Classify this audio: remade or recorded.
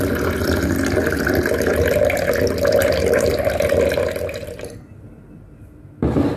recorded